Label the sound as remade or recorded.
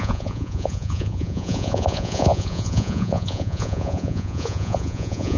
remade